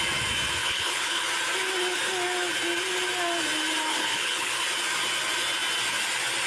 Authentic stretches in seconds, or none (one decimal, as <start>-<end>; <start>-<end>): 0.0-0.6; 1.3-3.9; 4.5-6.5